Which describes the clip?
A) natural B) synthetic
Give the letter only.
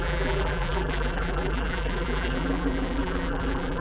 B